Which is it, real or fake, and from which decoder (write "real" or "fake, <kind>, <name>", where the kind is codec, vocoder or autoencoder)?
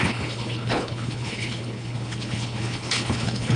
fake, codec, HILCodec